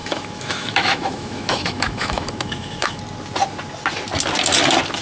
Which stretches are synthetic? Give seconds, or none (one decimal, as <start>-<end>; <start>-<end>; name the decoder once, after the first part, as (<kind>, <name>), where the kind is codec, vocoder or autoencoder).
0.0-3.0 (autoencoder, DAC-VAE)

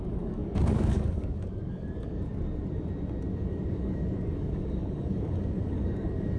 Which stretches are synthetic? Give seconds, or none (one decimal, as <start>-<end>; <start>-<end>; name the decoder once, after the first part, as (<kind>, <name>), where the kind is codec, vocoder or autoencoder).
0.0-2.3 (codec, DAC); 3.3-6.4

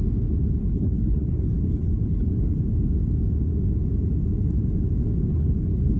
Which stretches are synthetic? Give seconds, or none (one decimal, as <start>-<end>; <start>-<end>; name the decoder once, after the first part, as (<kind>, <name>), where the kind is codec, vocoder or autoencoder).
0.6-2.6 (codec, HILCodec); 5.3-6.0